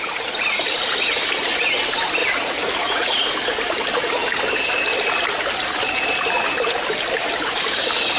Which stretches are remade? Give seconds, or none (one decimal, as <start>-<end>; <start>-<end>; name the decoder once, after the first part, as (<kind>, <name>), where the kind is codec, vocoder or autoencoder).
2.2-3.3 (vocoder, Vocos)